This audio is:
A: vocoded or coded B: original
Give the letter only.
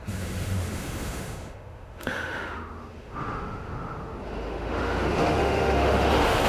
A